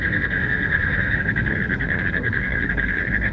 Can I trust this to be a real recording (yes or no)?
no